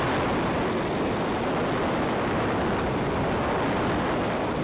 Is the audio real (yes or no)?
yes